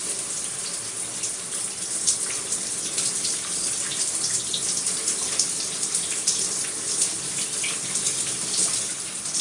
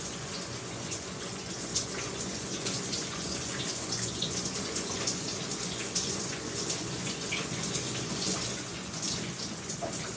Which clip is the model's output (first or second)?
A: second